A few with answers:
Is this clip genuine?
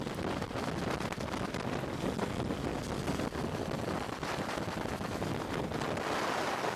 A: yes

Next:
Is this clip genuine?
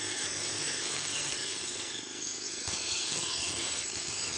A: no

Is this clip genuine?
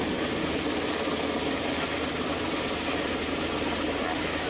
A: yes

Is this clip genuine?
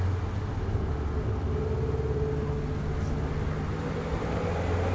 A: yes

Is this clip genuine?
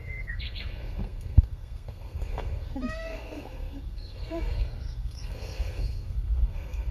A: no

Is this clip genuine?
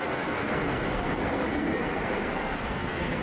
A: no